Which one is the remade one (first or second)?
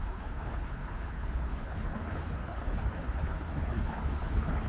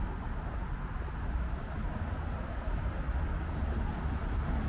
first